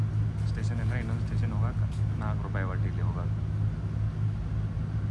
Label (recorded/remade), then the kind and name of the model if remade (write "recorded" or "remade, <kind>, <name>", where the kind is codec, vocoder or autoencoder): recorded